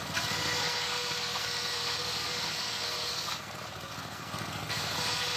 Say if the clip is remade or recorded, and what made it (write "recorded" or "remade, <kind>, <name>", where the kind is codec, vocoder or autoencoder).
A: remade, codec, SNAC